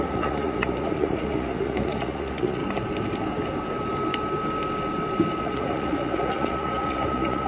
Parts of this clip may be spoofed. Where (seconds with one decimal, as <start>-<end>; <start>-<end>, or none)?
0.0-2.6; 5.4-7.5